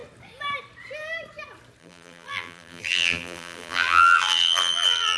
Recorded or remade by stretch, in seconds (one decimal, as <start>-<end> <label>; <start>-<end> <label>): 0.0-1.8 recorded; 1.8-5.2 remade